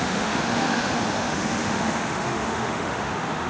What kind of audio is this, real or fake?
fake